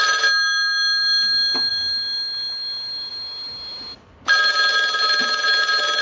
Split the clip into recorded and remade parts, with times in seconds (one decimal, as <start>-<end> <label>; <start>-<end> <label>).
0.0-6.0 recorded